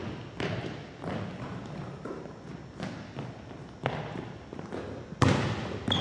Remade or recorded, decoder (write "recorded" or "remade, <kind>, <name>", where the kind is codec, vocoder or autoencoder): recorded